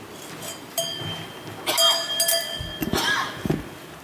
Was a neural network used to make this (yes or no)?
no